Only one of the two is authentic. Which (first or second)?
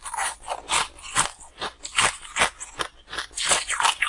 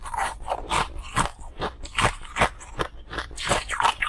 first